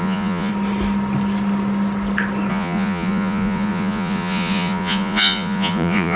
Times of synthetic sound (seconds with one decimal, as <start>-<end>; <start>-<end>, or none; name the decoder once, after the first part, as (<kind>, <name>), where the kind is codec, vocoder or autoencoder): 0.0-0.5 (vocoder, Vocos); 2.5-6.2